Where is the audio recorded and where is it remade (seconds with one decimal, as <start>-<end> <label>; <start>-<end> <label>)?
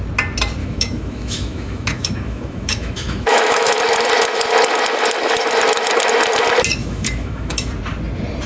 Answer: 0.0-0.6 recorded; 0.6-3.8 remade; 3.8-6.8 recorded; 6.8-7.7 remade; 7.7-8.5 recorded